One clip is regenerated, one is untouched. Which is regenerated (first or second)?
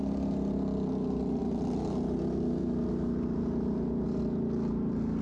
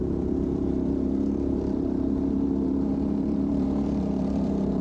second